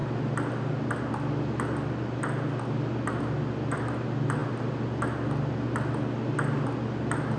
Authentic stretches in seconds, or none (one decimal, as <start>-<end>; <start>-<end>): 0.0-7.4